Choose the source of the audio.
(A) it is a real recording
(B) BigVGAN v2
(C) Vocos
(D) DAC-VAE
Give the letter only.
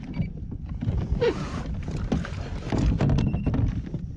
A